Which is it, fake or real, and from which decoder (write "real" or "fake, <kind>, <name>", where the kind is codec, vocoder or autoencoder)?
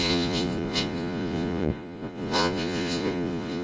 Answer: fake, vocoder, Vocos